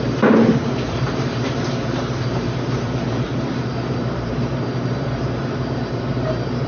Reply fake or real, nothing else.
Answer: fake